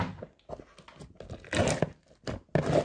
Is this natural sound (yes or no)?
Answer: yes